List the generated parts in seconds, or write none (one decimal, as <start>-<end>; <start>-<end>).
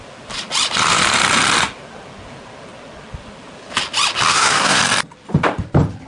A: 4.3-4.8